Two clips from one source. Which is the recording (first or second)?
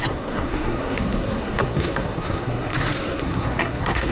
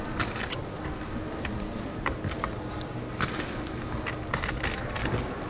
second